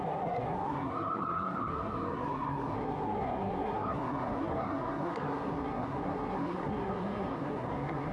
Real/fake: fake